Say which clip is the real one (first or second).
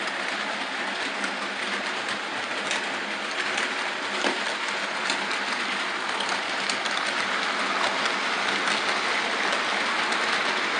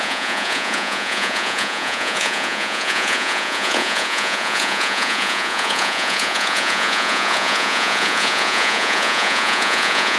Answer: first